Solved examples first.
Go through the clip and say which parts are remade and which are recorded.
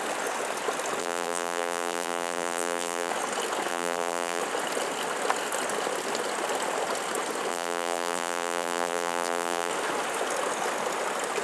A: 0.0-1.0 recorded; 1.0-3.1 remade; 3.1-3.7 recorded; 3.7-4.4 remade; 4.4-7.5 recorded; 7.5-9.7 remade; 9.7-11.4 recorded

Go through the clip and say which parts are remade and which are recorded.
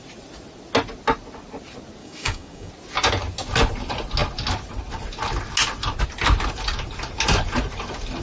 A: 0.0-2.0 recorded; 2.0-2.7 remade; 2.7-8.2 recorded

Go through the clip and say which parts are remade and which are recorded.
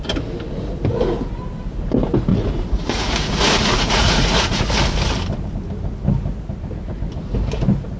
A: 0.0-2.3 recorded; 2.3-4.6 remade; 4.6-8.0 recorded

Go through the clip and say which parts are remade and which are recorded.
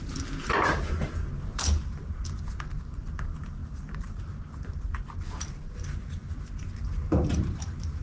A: 0.0-3.6 recorded; 3.6-4.2 remade; 4.2-8.0 recorded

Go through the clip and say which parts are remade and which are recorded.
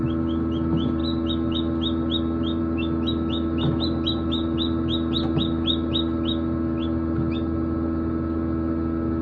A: 0.0-9.2 recorded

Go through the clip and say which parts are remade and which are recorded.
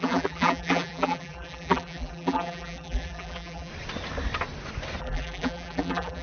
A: 0.0-3.7 remade; 3.7-5.0 recorded; 5.0-6.2 remade